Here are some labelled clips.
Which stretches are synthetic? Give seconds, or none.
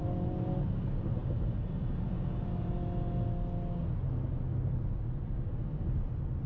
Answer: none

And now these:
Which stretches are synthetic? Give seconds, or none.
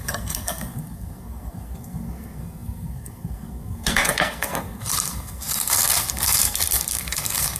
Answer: 0.0-7.6 (codec, SNAC)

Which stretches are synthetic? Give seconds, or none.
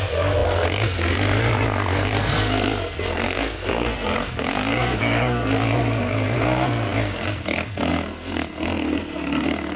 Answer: 0.0-9.8 (codec, SNAC)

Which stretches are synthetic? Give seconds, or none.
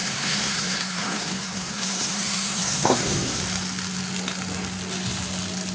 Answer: 0.0-3.4 (codec, SNAC)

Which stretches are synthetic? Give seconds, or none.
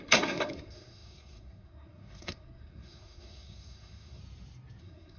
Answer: 0.0-4.2 (codec, SNAC); 4.8-5.2